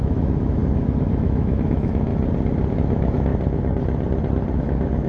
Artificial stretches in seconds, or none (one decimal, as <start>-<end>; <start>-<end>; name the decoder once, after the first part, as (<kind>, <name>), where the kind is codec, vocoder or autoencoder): 0.0-2.1 (autoencoder, DAC-VAE); 2.7-3.3; 4.6-5.1